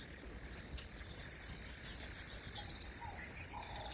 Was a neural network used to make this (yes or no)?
no